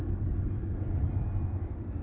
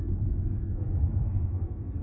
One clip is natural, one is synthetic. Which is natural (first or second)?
first